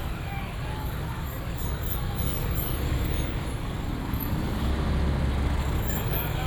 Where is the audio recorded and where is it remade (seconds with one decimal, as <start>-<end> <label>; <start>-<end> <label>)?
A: 0.0-4.7 remade; 4.7-5.6 recorded; 5.6-6.5 remade